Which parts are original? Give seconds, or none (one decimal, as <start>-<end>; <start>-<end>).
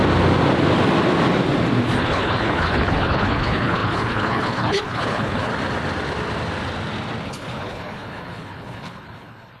0.0-2.0; 5.5-7.3